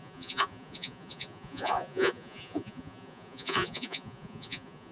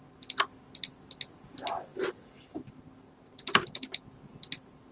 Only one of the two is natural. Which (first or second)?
second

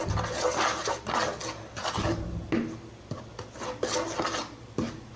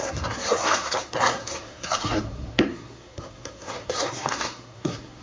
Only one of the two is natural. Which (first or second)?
first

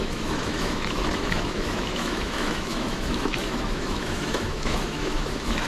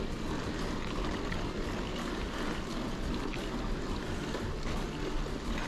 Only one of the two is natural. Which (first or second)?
second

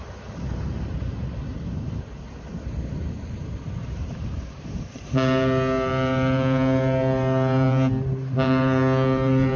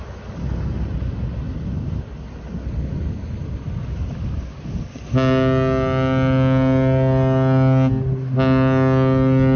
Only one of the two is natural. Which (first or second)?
second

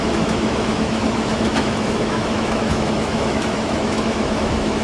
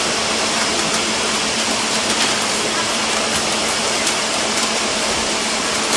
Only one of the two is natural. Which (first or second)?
second